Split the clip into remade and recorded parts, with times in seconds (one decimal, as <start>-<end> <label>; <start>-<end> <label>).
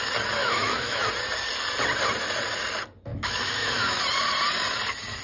0.0-0.4 recorded; 0.4-1.0 remade; 1.0-3.1 recorded; 3.1-4.0 remade; 4.0-5.2 recorded